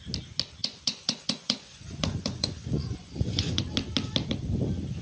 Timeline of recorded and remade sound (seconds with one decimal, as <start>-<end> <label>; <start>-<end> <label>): 0.0-0.6 recorded; 0.6-3.6 remade; 3.6-5.0 recorded